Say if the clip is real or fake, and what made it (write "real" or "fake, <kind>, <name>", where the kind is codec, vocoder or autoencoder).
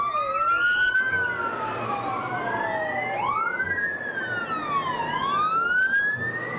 real